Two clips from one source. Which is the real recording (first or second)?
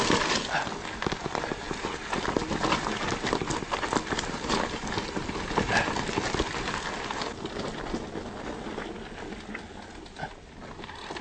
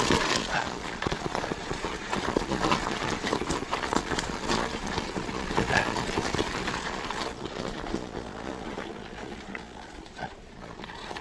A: first